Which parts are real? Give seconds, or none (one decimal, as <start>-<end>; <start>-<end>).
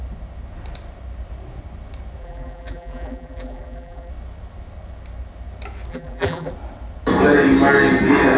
0.0-2.2; 4.1-5.9; 6.5-8.4